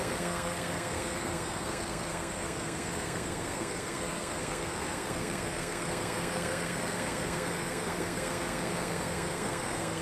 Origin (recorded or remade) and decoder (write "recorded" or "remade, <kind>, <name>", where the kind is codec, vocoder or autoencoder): remade, codec, SNAC